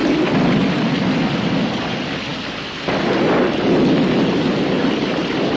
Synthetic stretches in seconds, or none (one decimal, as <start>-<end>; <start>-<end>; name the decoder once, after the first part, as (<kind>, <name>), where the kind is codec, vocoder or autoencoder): none